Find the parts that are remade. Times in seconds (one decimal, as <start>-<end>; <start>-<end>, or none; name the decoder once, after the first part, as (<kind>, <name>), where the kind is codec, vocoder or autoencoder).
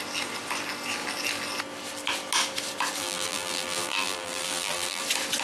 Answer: 3.0-5.0 (vocoder, BigVGAN v2)